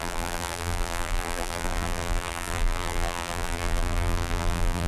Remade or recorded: remade